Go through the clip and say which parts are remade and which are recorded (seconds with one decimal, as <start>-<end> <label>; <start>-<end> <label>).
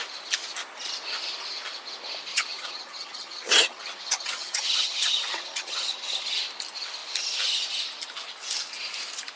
0.0-2.3 recorded; 2.3-6.3 remade; 6.3-9.4 recorded